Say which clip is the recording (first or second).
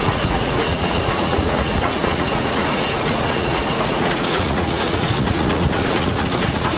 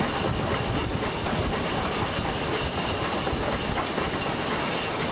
second